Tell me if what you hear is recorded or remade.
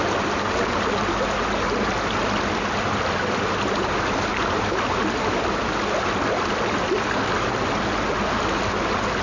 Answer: recorded